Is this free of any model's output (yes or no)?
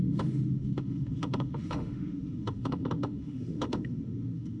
no